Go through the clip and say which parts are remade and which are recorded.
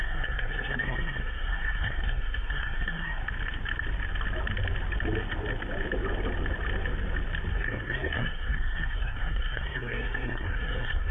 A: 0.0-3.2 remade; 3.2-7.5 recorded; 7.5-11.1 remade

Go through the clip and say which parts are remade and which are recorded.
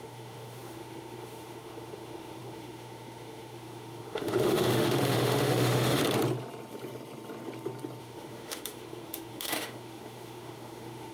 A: 0.0-6.0 remade; 6.0-8.0 recorded; 8.0-11.1 remade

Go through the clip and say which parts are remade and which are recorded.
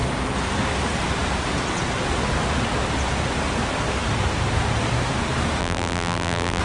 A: 0.0-5.6 recorded; 5.6-6.6 remade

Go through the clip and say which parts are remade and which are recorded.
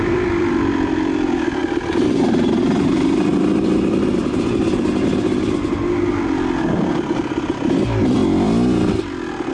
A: 0.0-3.3 remade; 3.3-6.7 recorded; 6.7-8.2 remade; 8.2-9.5 recorded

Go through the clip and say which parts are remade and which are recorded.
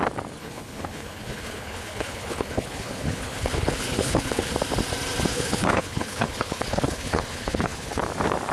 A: 0.0-0.4 recorded; 0.4-4.5 remade; 4.5-5.3 recorded; 5.3-8.0 remade; 8.0-8.5 recorded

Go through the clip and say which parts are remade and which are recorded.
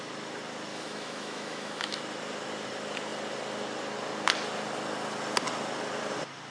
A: 0.0-0.7 recorded; 0.7-2.0 remade; 2.0-6.5 recorded